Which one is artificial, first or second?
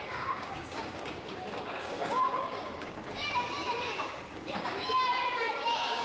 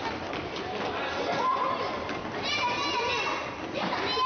first